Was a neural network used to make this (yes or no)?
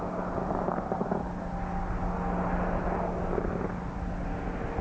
no